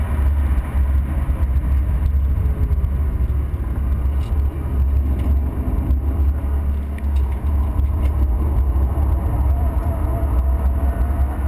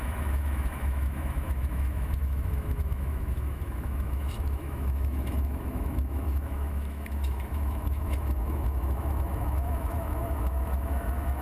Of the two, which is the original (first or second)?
first